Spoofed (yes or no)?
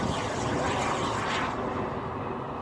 no